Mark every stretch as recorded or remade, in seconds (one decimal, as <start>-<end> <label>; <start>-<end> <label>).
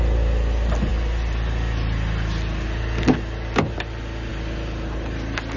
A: 0.0-5.6 recorded